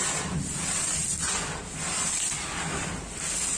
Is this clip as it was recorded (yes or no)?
yes